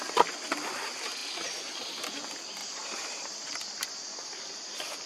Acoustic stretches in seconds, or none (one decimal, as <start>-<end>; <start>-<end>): 0.0-2.6; 3.6-5.1